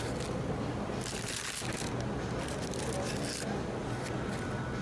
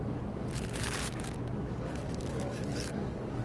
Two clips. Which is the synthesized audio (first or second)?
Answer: second